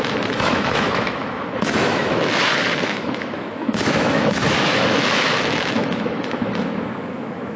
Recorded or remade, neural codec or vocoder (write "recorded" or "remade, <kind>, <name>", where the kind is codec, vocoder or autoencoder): remade, autoencoder, DAC-VAE